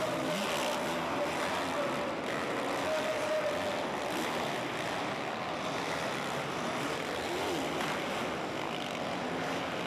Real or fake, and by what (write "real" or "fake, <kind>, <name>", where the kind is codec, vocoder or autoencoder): real